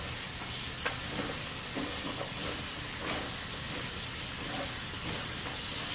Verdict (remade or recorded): recorded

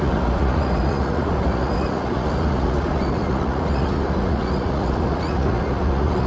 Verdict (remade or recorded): remade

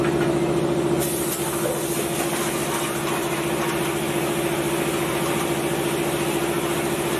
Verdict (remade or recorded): recorded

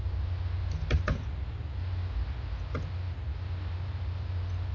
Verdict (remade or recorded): recorded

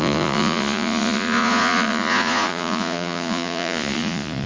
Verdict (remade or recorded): remade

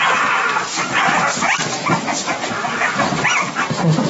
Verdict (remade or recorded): recorded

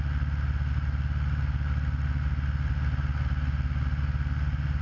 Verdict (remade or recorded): recorded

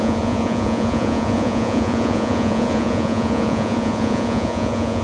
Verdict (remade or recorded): remade